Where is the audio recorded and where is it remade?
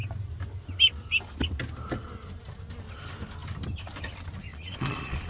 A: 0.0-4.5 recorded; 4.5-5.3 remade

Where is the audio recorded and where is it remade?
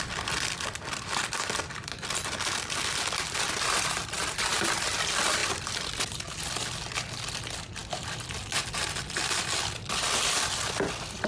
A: 0.0-11.3 recorded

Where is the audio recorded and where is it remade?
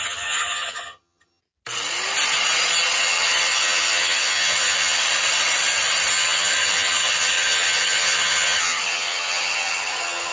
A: 0.0-1.4 remade; 1.4-3.0 recorded; 3.0-5.0 remade; 5.0-6.1 recorded; 6.1-10.3 remade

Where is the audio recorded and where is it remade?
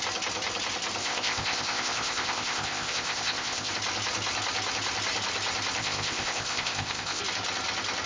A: 0.0-1.0 recorded; 1.0-3.7 remade; 3.7-5.8 recorded; 5.8-7.2 remade; 7.2-8.1 recorded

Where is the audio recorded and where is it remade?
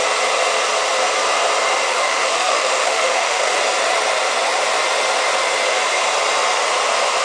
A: 0.0-1.9 recorded; 1.9-3.6 remade; 3.6-7.2 recorded